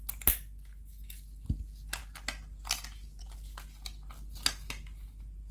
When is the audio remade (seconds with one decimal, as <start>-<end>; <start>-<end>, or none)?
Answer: none